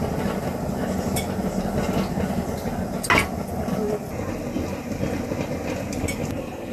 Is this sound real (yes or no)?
yes